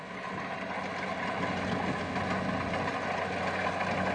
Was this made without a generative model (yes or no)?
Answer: yes